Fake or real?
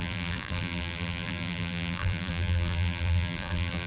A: fake